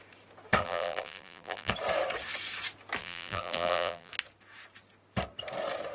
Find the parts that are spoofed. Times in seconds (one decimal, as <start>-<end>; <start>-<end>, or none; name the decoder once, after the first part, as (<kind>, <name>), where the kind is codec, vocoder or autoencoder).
0.6-1.7 (vocoder, BigVGAN v2); 3.0-4.1